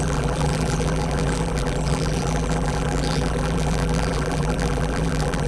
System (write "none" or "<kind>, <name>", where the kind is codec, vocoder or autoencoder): vocoder, BigVGAN v2